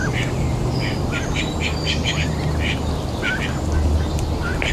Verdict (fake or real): real